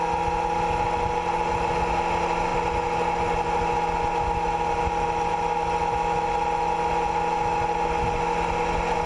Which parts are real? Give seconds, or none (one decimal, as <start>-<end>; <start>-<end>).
0.0-9.1

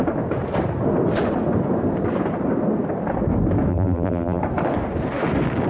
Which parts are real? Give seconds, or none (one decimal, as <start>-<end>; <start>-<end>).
0.0-3.7; 4.4-5.7

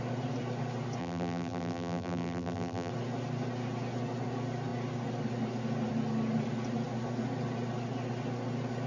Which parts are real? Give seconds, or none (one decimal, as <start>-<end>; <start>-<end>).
0.0-1.0; 2.9-8.9

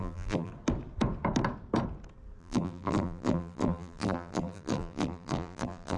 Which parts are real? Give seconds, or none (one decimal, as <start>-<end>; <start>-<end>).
0.5-2.4

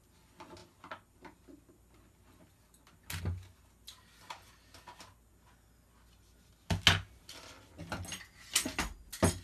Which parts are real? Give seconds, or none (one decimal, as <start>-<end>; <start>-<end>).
0.0-9.4

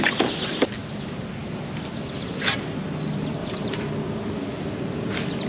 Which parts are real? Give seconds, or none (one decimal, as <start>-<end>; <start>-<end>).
0.0-3.4; 3.9-5.5

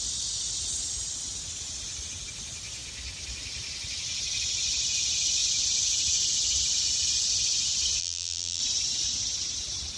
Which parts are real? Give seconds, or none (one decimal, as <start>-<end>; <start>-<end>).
0.0-8.0; 8.6-10.0

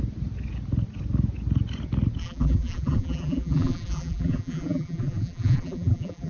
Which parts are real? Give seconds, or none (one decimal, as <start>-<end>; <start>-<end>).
0.0-2.2